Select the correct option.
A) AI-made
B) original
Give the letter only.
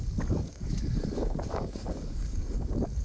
A